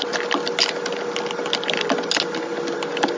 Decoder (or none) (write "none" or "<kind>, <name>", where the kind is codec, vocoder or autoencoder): none